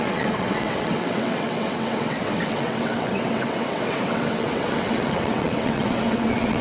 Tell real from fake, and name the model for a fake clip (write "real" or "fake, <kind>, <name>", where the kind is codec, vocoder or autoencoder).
fake, vocoder, WaveNeXt